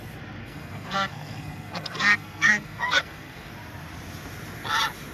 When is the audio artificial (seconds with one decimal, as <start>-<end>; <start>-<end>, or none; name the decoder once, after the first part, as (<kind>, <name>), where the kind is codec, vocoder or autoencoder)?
0.4-3.5 (codec, SNAC)